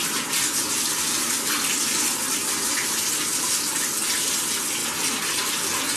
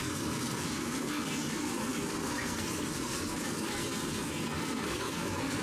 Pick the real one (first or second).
first